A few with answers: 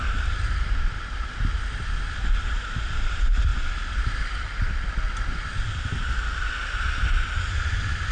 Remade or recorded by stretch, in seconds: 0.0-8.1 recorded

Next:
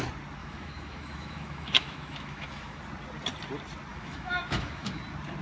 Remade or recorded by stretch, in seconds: 0.0-0.4 recorded; 0.4-2.8 remade; 2.8-3.9 recorded; 3.9-5.0 remade; 5.0-5.4 recorded

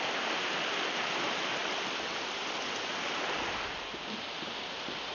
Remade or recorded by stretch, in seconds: 0.0-5.1 recorded